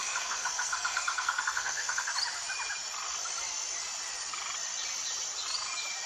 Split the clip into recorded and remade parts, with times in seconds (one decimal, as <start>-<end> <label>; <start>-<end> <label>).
0.0-2.1 remade; 2.1-6.1 recorded